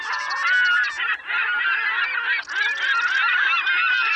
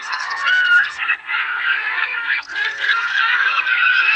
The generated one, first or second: second